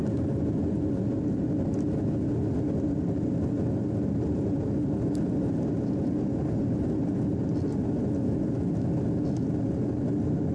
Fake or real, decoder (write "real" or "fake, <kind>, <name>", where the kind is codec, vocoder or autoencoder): real